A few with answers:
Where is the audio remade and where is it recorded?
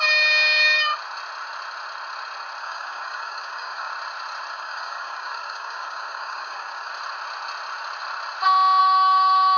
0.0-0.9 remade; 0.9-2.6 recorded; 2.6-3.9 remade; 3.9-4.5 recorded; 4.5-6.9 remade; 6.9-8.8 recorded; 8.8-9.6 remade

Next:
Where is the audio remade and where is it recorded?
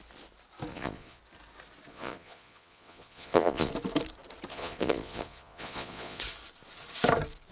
0.0-0.7 recorded; 0.7-1.2 remade; 1.2-1.9 recorded; 1.9-3.7 remade; 3.7-4.5 recorded; 4.5-6.2 remade; 6.2-7.5 recorded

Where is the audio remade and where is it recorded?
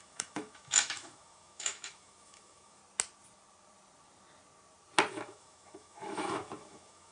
0.0-2.8 remade; 2.8-5.1 recorded; 5.1-7.1 remade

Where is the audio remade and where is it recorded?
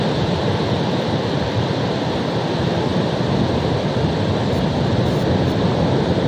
0.0-2.9 recorded; 2.9-5.4 remade; 5.4-6.3 recorded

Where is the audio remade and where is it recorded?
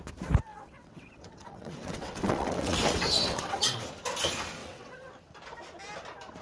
0.0-0.5 recorded; 0.5-3.8 remade; 3.8-4.6 recorded; 4.6-5.1 remade; 5.1-6.4 recorded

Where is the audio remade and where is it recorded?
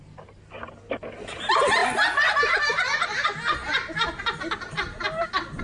0.0-3.6 recorded; 3.6-5.6 remade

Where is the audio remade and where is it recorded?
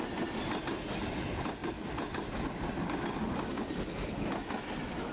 0.0-5.1 recorded